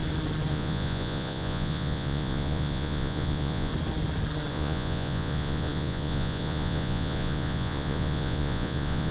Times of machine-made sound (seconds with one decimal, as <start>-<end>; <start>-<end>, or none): 0.5-3.7; 4.5-9.1